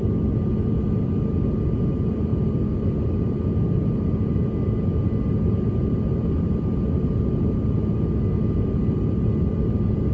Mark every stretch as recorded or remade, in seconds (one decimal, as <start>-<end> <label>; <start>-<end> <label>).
0.0-10.1 recorded